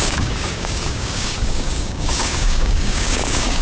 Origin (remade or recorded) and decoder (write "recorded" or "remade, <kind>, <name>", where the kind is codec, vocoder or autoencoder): remade, codec, DAC